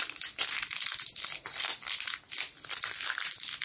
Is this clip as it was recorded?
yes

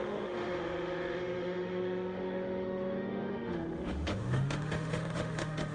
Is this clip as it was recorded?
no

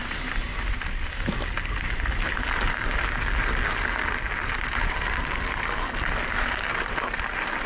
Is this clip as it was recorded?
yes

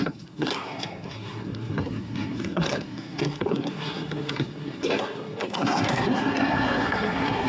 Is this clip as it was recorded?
no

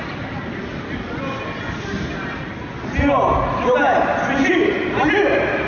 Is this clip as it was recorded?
yes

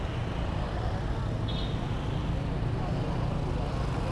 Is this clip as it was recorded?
yes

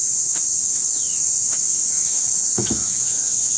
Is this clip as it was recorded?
no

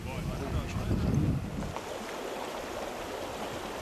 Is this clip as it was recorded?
yes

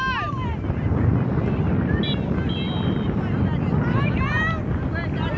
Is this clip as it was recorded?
yes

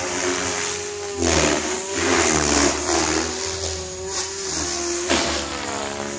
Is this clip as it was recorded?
yes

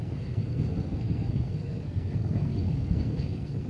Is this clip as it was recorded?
no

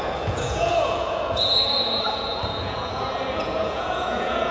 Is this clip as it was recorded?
no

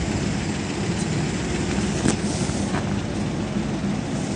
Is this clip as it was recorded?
yes